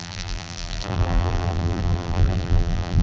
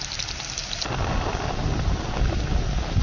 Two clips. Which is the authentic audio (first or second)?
second